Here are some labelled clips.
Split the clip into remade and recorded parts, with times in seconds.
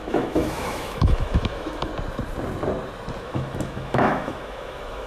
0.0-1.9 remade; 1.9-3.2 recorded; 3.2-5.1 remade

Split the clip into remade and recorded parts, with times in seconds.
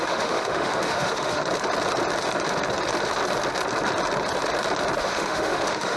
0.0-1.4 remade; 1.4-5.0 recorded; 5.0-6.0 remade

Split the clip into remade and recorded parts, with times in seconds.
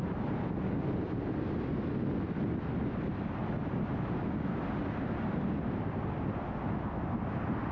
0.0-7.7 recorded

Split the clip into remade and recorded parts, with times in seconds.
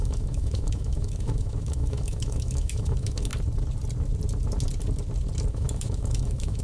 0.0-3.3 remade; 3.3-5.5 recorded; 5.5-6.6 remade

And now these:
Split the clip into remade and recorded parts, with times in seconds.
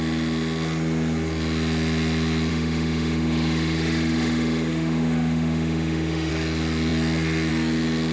0.0-2.5 recorded; 2.5-6.3 remade; 6.3-8.1 recorded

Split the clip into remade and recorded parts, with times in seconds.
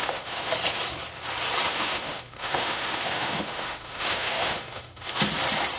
0.0-0.5 remade; 0.5-1.7 recorded; 1.7-5.2 remade; 5.2-5.8 recorded